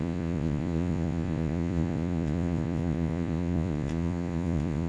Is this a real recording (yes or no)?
no